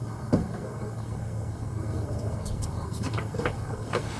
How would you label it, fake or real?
fake